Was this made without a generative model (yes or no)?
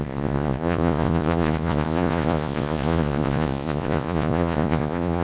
no